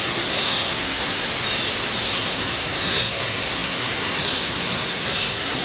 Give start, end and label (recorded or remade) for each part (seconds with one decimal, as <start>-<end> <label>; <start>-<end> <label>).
0.0-1.3 remade; 1.3-2.0 recorded; 2.0-5.6 remade